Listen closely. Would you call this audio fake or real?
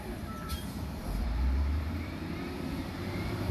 fake